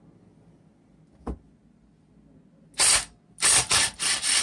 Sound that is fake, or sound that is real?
real